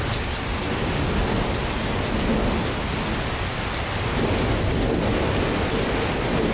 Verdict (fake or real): real